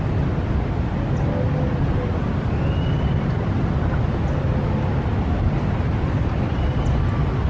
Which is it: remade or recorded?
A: recorded